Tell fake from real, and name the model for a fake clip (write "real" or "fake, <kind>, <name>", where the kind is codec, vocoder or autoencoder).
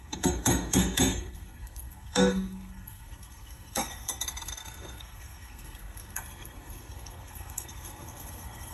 fake, codec, SNAC